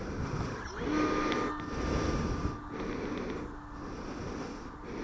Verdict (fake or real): real